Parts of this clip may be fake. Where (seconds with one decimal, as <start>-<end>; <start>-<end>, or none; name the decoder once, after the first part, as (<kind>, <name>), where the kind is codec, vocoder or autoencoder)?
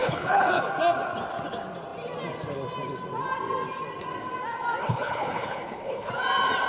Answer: 0.0-0.6 (codec, HILCodec); 4.8-6.1